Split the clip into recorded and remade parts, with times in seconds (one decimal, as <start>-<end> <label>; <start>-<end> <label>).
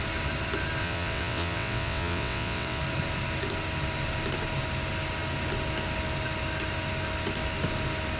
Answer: 0.0-0.8 recorded; 0.8-2.8 remade; 2.8-8.2 recorded